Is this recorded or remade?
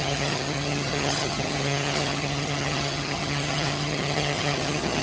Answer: remade